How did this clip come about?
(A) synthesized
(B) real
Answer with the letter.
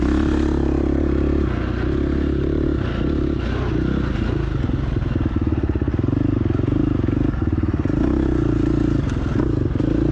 B